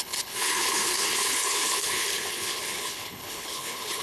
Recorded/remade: remade